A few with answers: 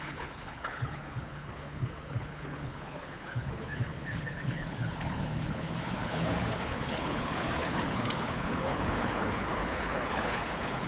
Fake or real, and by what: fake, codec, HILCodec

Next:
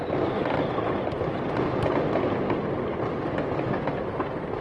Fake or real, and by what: real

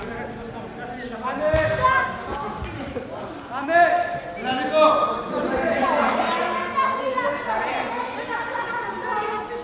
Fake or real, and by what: real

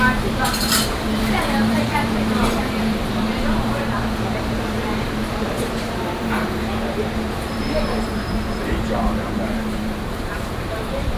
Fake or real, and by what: fake, vocoder, BigVGAN v2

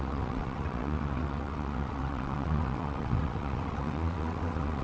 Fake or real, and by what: fake, vocoder, WaveNeXt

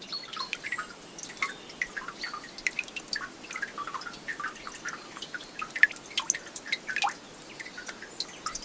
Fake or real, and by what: real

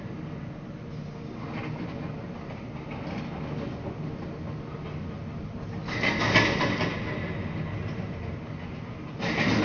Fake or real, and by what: real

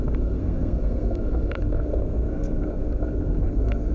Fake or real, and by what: fake, codec, SNAC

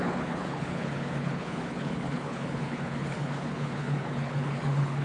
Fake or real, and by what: fake, codec, HILCodec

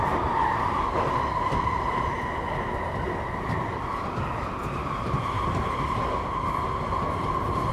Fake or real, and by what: real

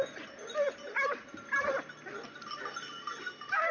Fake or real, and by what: real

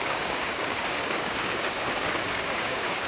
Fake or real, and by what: fake, codec, DAC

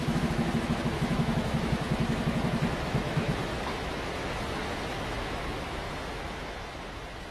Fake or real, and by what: fake, autoencoder, DAC-VAE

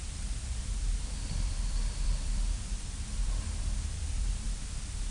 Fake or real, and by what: fake, vocoder, BigVGAN v2